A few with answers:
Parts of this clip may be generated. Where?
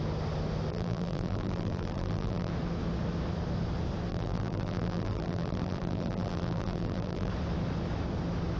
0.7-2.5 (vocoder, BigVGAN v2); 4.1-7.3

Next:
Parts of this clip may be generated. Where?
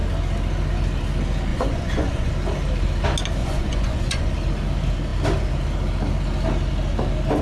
1.5-2.3 (vocoder, Vocos); 3.4-4.3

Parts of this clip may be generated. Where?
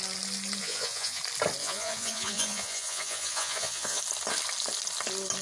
0.6-1.2 (vocoder, Vocos); 1.6-4.0